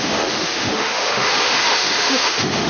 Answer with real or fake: fake